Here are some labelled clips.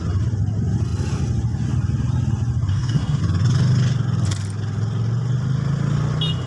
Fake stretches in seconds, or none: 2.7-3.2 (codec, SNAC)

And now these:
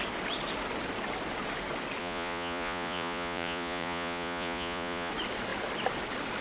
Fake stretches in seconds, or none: 2.0-5.1 (vocoder, Vocos)

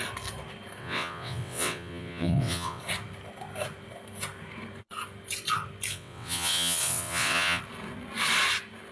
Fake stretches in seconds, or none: 0.8-2.8 (vocoder, WaveNeXt); 5.9-7.6

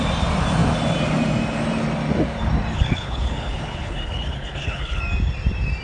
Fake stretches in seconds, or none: 2.7-5.0 (codec, HILCodec)

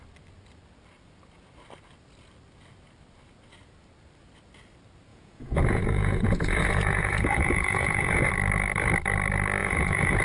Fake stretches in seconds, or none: 5.1-8.3 (vocoder, Vocos); 9.6-10.2

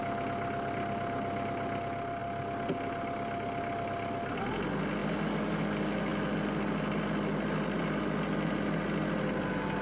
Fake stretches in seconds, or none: none

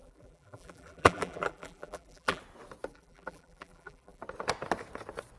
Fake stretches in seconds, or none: 0.0-2.4 (vocoder, BigVGAN v2); 2.9-4.2

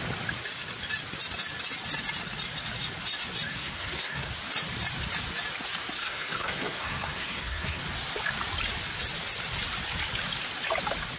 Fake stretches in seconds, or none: 3.5-4.3 (codec, SNAC); 6.0-7.8